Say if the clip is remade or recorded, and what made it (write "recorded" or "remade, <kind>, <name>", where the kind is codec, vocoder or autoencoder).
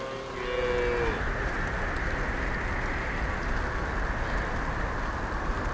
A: recorded